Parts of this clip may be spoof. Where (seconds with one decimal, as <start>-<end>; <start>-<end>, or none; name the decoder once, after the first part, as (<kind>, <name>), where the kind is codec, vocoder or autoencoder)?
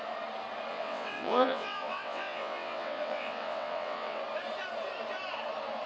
0.7-4.2 (vocoder, WaveNeXt)